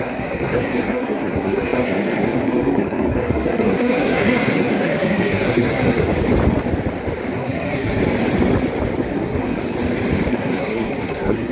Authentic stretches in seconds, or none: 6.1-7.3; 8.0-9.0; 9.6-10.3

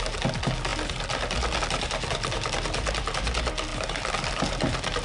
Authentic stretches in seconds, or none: 0.0-5.0

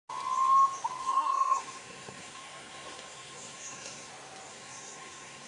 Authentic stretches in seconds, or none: 0.0-1.0; 4.1-4.5

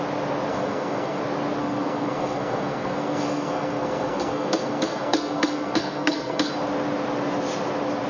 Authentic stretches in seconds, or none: 0.0-0.5; 1.2-1.6; 6.5-8.1